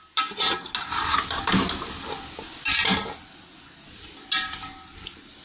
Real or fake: real